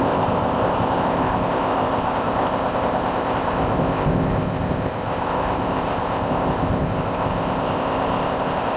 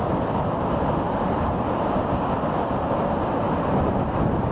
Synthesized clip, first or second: first